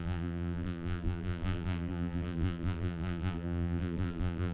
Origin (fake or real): fake